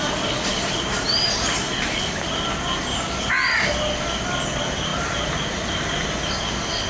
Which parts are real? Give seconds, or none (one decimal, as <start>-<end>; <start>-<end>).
0.0-6.9